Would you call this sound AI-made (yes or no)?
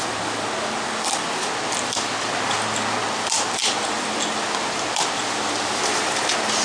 no